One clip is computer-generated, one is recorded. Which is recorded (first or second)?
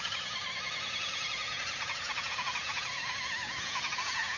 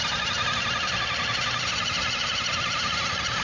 second